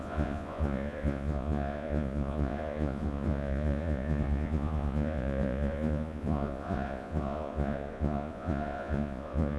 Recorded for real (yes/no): no